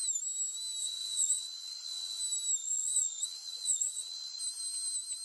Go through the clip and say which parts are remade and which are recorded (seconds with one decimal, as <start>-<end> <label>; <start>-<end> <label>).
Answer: 0.0-0.8 recorded; 0.8-2.2 remade; 2.2-2.6 recorded; 2.6-4.4 remade; 4.4-5.2 recorded